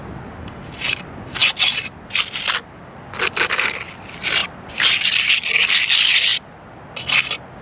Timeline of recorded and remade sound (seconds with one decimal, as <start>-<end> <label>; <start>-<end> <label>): 0.0-7.6 recorded